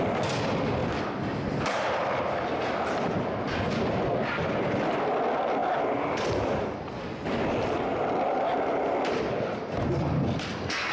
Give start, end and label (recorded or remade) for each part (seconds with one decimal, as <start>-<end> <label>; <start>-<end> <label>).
0.0-10.9 recorded